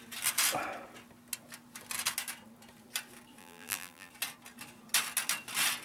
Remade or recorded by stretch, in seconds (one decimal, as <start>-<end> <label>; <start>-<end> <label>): 0.0-3.4 recorded; 3.4-4.1 remade; 4.1-5.8 recorded